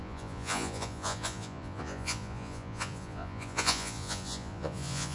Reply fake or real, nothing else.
fake